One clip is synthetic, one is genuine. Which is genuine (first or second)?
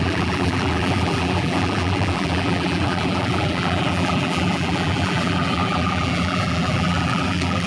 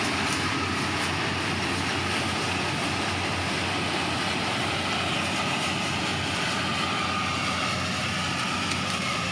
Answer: second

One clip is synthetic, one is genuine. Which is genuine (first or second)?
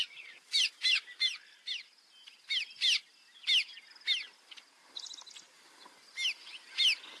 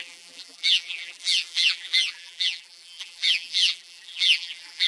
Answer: first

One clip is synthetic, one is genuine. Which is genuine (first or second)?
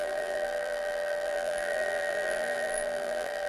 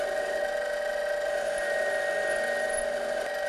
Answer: second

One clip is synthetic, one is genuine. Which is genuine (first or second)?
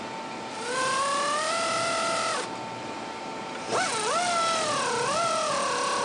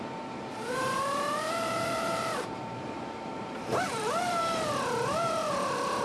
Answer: first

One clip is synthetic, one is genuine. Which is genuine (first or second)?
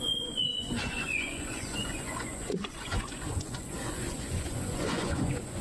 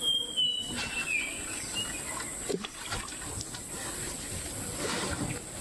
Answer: second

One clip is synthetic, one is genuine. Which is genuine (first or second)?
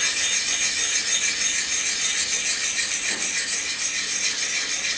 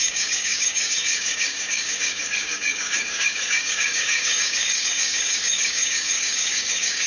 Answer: first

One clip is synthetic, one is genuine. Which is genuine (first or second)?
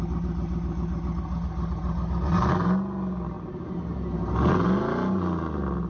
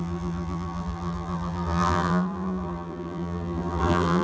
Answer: first